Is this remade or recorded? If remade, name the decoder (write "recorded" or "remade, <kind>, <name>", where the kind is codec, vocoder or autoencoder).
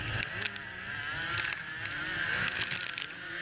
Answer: recorded